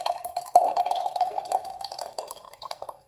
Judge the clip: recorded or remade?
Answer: remade